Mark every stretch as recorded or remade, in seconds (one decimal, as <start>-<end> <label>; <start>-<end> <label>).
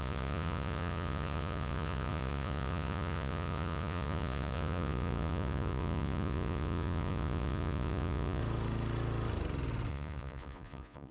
0.0-8.4 remade; 8.4-9.9 recorded; 9.9-11.1 remade